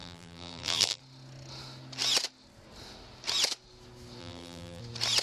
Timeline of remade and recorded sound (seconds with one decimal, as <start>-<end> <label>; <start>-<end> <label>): 0.0-1.0 remade; 1.0-4.2 recorded; 4.2-4.8 remade; 4.8-5.2 recorded